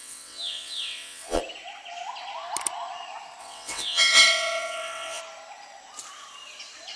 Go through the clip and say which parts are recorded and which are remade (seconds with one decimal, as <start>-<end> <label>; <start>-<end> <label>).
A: 0.0-1.4 remade; 1.4-3.4 recorded; 3.4-5.2 remade; 5.2-7.0 recorded